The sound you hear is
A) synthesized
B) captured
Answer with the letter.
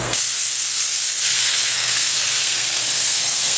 A